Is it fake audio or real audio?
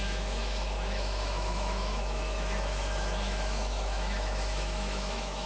fake